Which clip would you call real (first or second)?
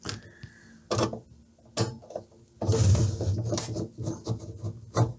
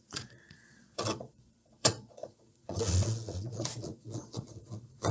first